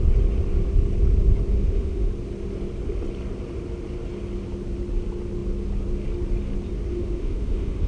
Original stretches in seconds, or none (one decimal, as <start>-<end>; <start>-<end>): 0.0-1.5; 2.1-6.9